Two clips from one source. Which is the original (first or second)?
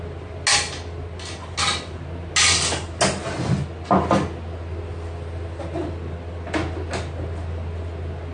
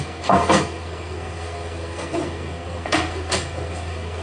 first